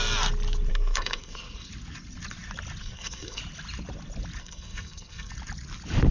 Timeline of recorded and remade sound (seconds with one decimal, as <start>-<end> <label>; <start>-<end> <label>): 0.0-0.7 recorded; 0.7-1.7 remade; 1.7-2.8 recorded; 2.8-3.4 remade; 3.4-4.4 recorded; 4.4-5.3 remade; 5.3-6.1 recorded